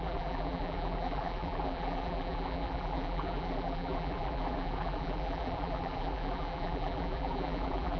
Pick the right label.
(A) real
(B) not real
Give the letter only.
B